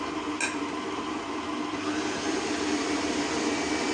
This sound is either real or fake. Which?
real